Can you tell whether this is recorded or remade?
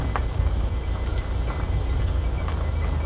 recorded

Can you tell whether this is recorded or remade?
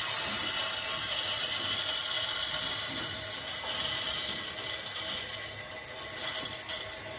recorded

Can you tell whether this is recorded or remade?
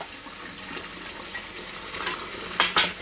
recorded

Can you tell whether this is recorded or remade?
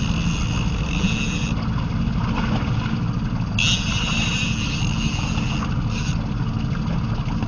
recorded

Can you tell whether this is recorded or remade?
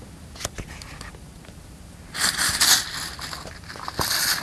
recorded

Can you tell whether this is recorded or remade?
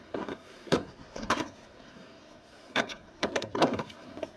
remade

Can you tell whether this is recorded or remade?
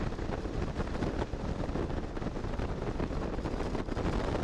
recorded